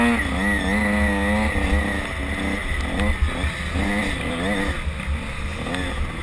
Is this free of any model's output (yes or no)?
yes